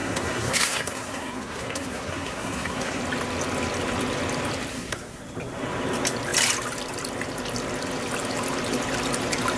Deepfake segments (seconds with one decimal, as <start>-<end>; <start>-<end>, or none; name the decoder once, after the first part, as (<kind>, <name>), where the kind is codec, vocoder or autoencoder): 0.0-3.0 (codec, SNAC); 4.7-5.2